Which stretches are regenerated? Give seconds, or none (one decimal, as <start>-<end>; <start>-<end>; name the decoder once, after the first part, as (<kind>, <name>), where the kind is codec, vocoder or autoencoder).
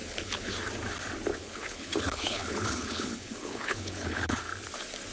0.0-0.5 (codec, HILCodec); 1.3-4.4